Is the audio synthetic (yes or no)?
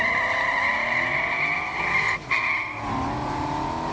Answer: no